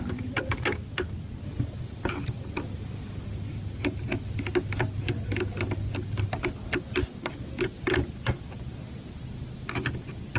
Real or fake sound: real